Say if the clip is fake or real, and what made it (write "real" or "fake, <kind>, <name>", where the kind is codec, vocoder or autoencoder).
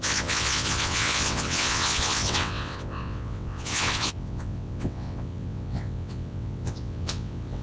fake, vocoder, WaveNeXt